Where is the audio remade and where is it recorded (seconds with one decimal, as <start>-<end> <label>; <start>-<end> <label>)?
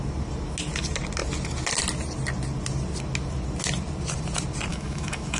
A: 0.0-4.7 recorded; 4.7-5.4 remade